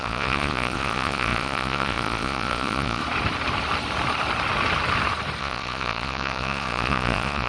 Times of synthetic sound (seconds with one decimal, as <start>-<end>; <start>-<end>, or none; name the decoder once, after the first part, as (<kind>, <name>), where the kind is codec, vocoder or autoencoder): 0.0-3.0 (vocoder, Vocos); 5.4-7.5